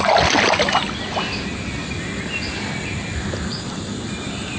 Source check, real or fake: real